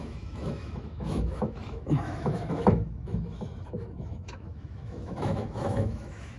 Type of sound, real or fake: fake